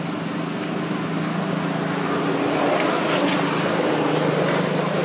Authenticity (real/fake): real